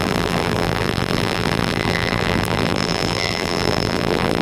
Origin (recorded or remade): remade